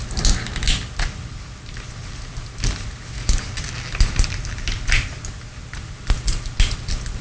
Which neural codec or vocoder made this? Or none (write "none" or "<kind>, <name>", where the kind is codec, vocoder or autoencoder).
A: none